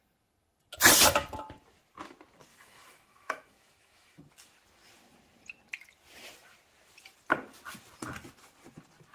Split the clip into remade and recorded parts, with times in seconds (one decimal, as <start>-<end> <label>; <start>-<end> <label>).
0.0-2.5 recorded; 2.5-4.2 remade; 4.2-9.1 recorded